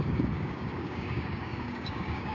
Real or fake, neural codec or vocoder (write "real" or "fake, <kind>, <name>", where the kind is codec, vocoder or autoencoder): fake, codec, DAC